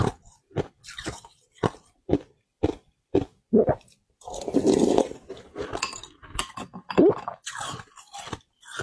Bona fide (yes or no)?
no